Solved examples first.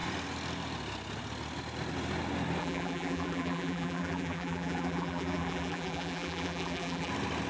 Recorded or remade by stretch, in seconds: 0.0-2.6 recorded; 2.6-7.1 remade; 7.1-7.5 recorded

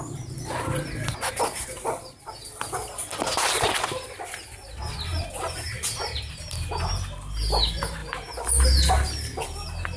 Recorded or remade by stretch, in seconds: 0.0-5.1 recorded; 5.1-5.7 remade; 5.7-10.0 recorded

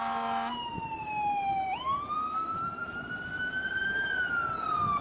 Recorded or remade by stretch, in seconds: 0.0-0.9 recorded; 0.9-3.7 remade; 3.7-5.0 recorded